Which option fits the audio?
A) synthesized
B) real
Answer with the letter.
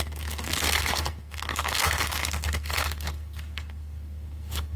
A